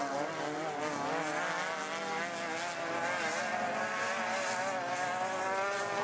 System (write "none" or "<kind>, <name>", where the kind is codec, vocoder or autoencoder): none